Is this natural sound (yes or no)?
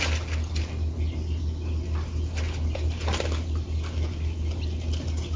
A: yes